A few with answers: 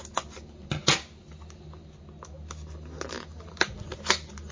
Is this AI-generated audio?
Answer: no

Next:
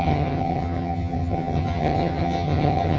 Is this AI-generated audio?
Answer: yes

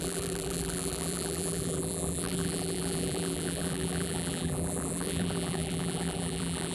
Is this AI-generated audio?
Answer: yes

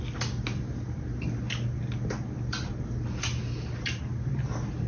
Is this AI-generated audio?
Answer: no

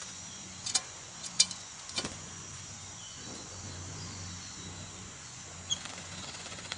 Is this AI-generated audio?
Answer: yes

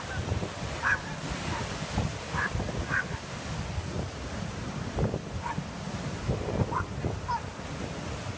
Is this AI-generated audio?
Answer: no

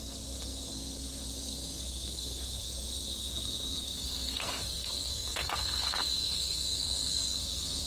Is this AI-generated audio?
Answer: yes